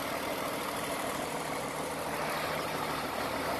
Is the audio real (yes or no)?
no